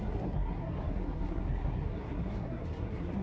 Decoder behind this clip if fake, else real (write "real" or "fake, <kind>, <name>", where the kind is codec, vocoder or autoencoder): fake, codec, SNAC